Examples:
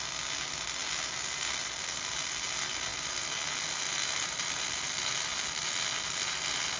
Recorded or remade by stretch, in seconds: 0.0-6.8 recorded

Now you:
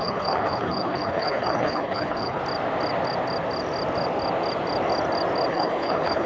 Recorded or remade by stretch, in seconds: 0.0-2.4 remade; 2.4-5.5 recorded; 5.5-6.3 remade

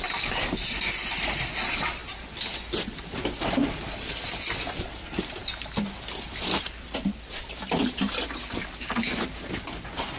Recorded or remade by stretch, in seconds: 0.0-10.2 recorded

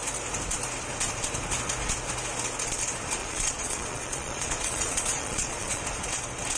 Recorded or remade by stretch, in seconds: 0.0-3.2 recorded; 3.2-5.8 remade; 5.8-6.6 recorded

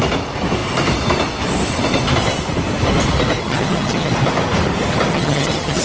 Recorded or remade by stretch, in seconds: 0.0-3.4 recorded; 3.4-4.1 remade; 4.1-5.1 recorded; 5.1-5.8 remade

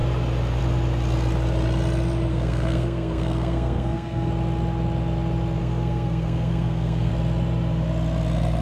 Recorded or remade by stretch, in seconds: 0.0-2.3 recorded; 2.3-4.3 remade; 4.3-5.6 recorded; 5.6-7.1 remade; 7.1-8.6 recorded

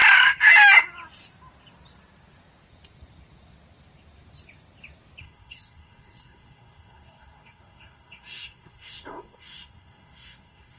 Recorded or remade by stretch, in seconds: 0.0-5.2 recorded; 5.2-10.8 remade